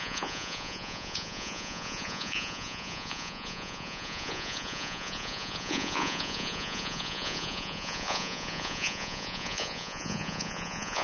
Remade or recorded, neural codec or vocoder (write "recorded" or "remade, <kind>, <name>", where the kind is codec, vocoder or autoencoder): remade, vocoder, Vocos